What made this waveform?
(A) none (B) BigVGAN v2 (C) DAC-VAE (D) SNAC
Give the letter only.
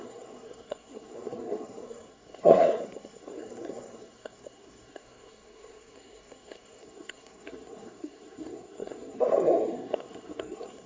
D